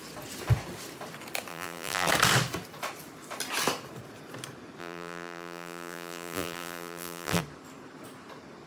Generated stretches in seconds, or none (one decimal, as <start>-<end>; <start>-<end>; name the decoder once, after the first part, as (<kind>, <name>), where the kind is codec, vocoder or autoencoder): 1.5-2.1 (vocoder, BigVGAN v2); 4.8-7.4